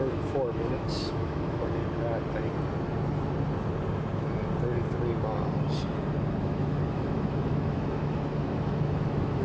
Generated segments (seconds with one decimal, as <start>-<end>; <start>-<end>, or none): 0.0-1.8; 6.4-9.4